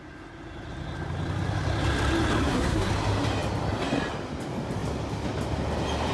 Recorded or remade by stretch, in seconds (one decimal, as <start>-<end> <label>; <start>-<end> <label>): 0.0-2.4 recorded; 2.4-2.9 remade; 2.9-6.1 recorded